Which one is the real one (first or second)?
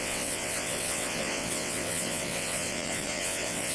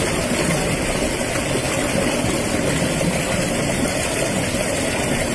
second